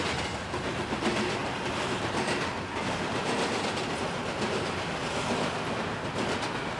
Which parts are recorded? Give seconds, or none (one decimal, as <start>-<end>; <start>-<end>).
0.0-6.8